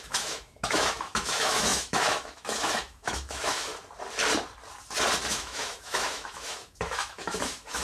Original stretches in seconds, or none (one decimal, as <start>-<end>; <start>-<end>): 3.7-5.3